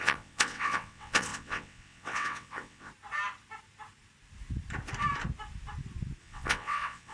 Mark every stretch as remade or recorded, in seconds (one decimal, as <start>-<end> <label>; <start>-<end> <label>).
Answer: 0.0-2.9 remade; 2.9-6.2 recorded; 6.2-7.1 remade